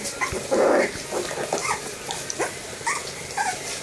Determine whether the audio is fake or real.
real